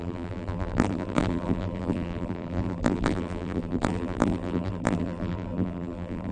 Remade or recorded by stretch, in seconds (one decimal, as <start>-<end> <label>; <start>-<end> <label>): 0.0-6.3 remade